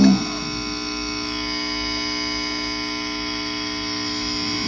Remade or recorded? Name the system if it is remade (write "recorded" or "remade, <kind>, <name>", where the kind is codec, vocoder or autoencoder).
remade, autoencoder, DAC-VAE